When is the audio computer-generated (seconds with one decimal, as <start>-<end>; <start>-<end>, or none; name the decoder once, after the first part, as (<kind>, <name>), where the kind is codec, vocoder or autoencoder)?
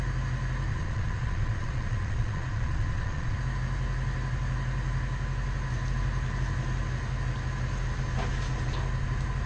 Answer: 0.7-3.4 (vocoder, Vocos)